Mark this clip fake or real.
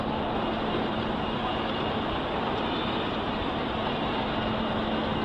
real